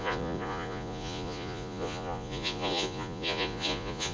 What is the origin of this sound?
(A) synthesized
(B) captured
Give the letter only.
A